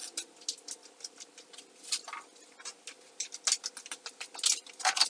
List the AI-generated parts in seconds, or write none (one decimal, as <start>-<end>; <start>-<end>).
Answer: none